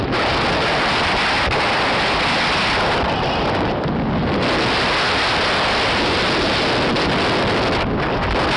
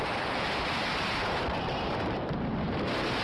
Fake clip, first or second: second